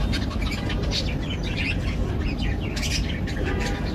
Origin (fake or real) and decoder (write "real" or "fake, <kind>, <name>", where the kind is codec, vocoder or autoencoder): real